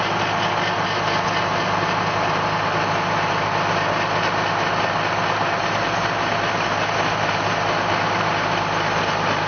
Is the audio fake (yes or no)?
no